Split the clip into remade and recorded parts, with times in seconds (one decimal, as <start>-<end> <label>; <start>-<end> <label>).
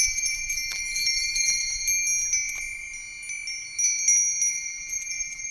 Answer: 0.0-1.8 remade; 1.8-4.5 recorded; 4.5-5.5 remade